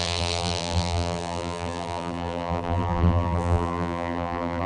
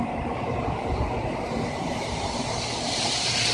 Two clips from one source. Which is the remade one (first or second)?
first